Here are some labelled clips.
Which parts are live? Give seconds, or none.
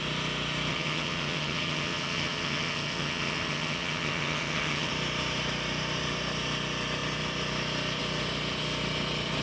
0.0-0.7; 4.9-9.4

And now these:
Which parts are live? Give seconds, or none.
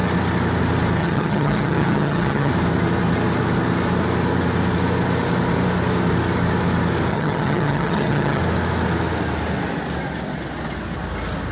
0.0-1.0; 2.5-7.1; 8.4-11.5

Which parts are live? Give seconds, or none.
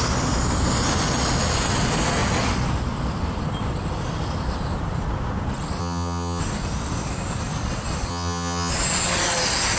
0.0-5.8; 6.4-8.1; 8.7-9.8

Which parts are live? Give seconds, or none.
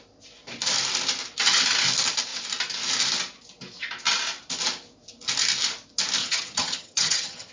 0.0-6.2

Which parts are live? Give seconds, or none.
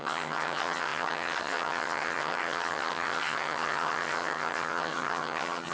none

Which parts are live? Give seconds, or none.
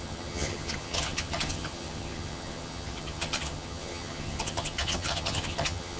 none